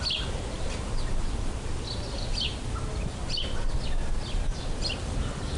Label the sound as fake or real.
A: real